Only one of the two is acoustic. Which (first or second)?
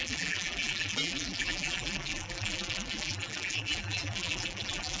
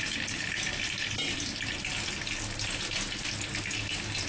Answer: second